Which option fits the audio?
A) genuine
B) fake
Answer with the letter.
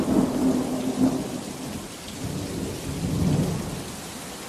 A